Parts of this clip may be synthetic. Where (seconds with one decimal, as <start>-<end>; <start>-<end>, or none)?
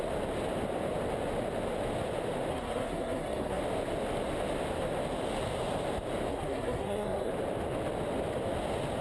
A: 2.5-3.6; 6.3-7.3